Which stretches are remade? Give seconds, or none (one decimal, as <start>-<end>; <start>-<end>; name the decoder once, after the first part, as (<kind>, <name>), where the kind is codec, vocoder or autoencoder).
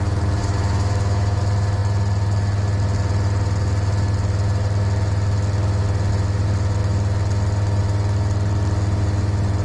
0.4-1.4 (autoencoder, DAC-VAE)